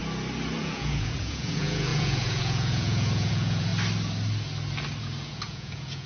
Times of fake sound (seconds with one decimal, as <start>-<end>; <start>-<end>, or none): 0.6-3.7; 5.0-6.1